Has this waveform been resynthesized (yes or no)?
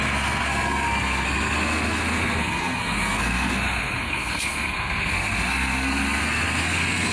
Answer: yes